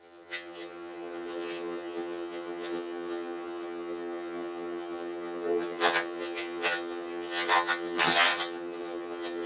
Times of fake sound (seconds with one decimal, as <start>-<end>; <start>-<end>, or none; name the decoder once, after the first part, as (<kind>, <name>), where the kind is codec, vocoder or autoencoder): 0.0-9.5 (vocoder, HiFi-GAN)